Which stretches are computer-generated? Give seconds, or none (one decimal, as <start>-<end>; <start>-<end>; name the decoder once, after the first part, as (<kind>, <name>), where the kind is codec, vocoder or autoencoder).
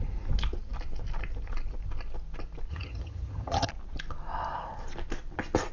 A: 2.7-3.7 (vocoder, HiFi-GAN)